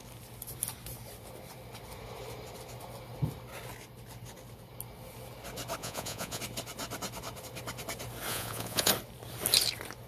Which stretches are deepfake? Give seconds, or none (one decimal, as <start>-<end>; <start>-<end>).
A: 5.8-6.4; 8.3-8.9